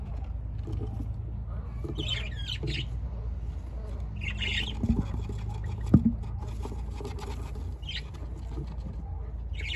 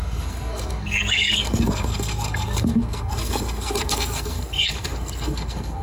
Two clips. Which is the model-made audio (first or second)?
second